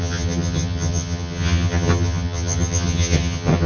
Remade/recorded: remade